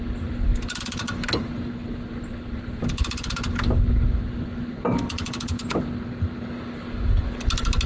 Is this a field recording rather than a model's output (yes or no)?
yes